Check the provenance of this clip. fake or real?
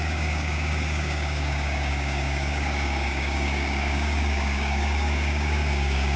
fake